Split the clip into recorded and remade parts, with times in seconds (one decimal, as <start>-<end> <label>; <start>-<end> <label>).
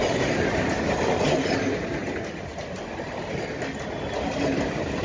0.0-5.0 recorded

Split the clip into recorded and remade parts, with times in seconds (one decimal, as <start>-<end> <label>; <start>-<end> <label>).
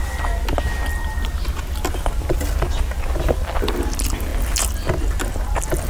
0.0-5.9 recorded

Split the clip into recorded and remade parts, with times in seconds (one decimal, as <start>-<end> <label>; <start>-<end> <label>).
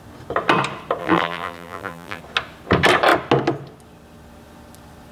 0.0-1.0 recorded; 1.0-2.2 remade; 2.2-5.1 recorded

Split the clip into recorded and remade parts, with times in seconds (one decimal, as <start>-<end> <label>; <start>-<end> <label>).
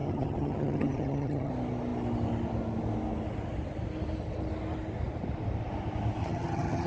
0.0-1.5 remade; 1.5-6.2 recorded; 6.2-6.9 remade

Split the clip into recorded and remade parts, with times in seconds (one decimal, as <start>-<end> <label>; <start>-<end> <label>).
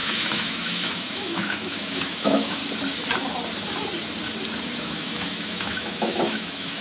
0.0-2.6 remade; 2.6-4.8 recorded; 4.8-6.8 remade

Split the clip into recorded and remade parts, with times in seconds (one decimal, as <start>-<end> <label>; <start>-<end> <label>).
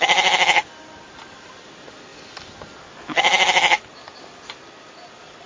0.0-5.5 recorded